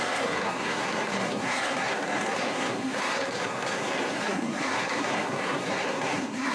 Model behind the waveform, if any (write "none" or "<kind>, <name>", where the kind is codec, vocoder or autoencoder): codec, SNAC